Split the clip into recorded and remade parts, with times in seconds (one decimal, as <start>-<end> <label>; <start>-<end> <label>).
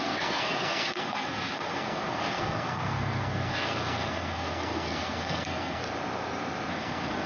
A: 0.0-5.8 remade; 5.8-6.7 recorded; 6.7-7.3 remade